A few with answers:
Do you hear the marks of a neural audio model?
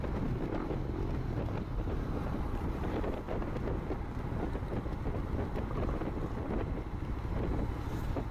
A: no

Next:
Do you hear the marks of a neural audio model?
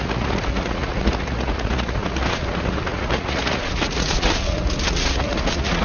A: yes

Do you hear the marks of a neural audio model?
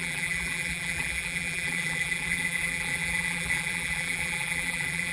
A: yes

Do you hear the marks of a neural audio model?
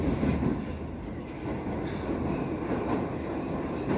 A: no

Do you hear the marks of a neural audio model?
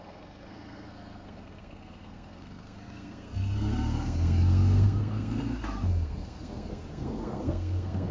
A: yes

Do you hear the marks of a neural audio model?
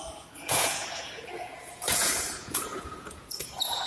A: yes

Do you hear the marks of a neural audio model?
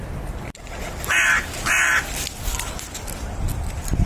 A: no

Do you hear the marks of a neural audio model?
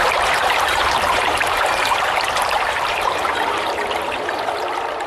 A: yes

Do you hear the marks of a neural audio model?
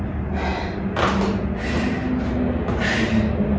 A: no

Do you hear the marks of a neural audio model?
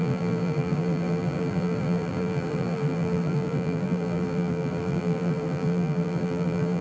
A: yes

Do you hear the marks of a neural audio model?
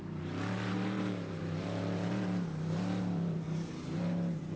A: yes